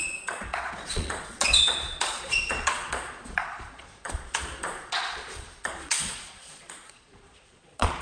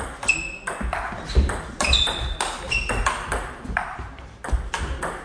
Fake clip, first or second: first